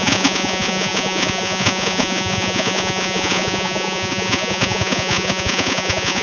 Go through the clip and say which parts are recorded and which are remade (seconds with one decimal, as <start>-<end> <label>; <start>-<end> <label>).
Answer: 0.0-6.2 remade